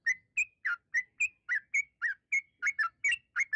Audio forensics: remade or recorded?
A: recorded